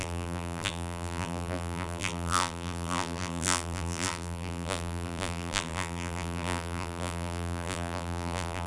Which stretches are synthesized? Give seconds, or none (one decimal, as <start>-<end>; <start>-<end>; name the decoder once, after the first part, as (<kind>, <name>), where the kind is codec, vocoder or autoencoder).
0.0-8.7 (vocoder, BigVGAN v2)